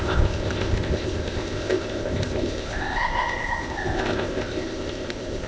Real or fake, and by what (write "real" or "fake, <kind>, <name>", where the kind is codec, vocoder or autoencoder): fake, codec, ZipCodec